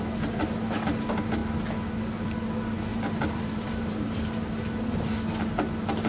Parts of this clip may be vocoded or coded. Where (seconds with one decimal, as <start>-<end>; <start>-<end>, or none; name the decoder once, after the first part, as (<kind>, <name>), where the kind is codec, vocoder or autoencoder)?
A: 2.9-4.5 (vocoder, BigVGAN v2)